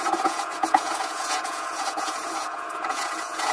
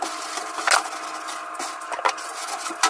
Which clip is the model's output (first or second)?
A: first